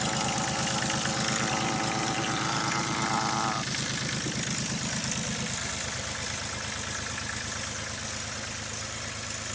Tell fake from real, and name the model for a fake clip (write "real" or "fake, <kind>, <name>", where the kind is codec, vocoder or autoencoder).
real